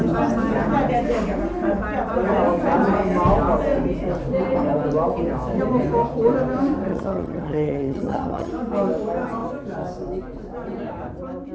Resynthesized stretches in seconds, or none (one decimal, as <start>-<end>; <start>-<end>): 6.9-8.5